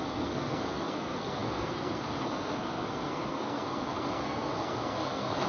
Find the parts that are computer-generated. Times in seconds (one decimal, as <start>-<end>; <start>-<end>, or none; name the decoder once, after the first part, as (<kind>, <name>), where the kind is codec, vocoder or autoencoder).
0.0-5.5 (codec, SNAC)